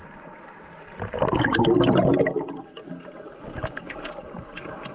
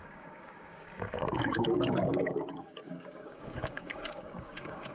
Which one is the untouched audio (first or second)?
first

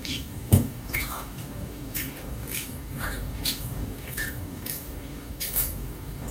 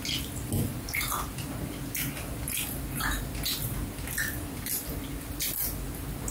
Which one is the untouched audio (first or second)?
second